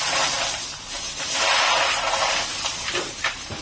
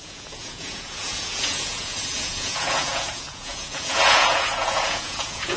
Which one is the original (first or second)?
first